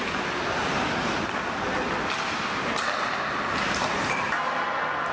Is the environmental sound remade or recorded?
recorded